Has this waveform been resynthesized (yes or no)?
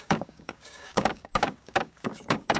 yes